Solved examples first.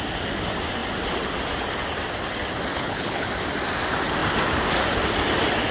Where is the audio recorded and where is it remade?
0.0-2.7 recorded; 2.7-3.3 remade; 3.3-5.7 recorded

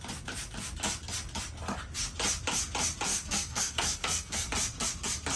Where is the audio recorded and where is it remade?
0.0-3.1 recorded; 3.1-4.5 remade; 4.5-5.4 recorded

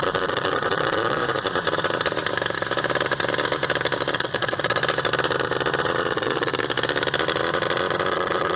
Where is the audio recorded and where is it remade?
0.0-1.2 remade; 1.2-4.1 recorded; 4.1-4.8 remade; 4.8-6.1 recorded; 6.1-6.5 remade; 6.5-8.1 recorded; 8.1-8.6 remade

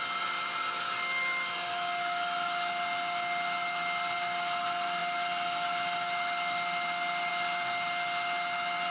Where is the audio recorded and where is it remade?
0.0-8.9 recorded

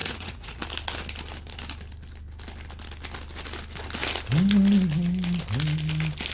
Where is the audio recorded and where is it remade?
0.0-0.6 remade; 0.6-6.3 recorded

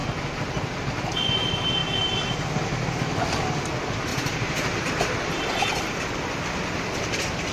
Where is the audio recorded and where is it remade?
0.0-4.1 recorded; 4.1-6.0 remade; 6.0-7.5 recorded

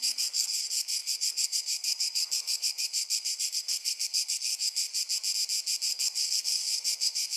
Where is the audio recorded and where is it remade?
0.0-4.9 remade; 4.9-5.9 recorded; 5.9-7.4 remade

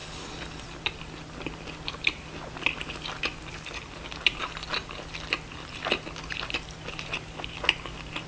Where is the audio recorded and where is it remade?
0.0-8.3 recorded